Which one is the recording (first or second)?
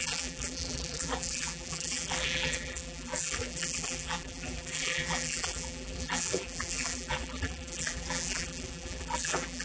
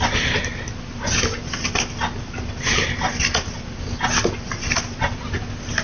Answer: second